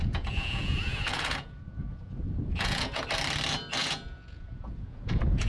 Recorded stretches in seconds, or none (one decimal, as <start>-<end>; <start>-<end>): 3.0-3.8